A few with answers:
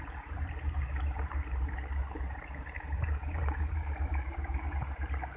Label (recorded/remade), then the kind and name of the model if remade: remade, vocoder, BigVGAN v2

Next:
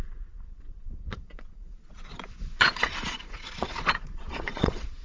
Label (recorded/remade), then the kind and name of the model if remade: remade, vocoder, Vocos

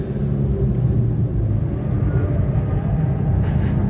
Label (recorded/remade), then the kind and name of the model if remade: recorded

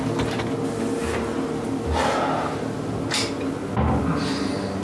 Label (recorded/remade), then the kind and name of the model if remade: recorded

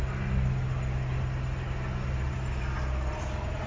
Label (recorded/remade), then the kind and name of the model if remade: recorded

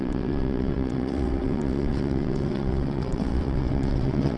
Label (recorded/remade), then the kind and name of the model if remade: remade, vocoder, WaveNeXt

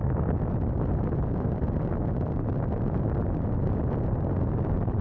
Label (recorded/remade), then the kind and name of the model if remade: recorded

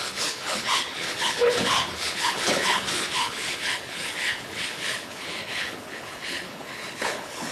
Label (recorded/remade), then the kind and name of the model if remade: remade, codec, HILCodec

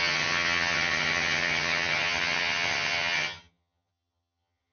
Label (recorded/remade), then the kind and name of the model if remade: remade, vocoder, HiFi-GAN